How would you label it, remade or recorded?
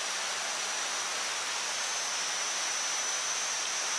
recorded